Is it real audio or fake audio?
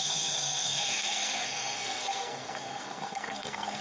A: fake